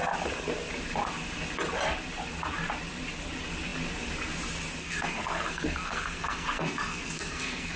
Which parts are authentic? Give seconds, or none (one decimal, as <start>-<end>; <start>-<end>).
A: 0.0-4.8